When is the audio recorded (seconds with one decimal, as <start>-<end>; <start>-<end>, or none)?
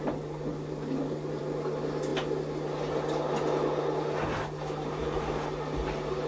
0.0-6.3